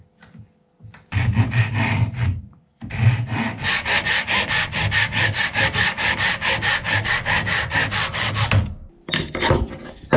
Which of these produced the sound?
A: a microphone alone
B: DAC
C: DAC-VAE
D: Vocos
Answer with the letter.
A